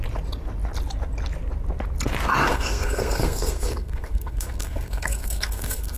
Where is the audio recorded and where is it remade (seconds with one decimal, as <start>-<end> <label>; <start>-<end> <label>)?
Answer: 0.0-2.5 recorded; 2.5-6.0 remade